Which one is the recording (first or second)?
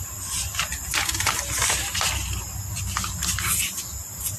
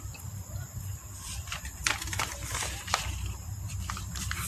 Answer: first